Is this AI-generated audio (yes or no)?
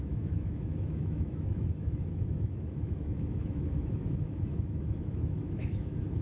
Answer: yes